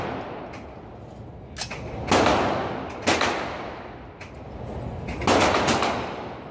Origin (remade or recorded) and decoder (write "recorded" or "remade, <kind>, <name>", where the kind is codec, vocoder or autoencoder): recorded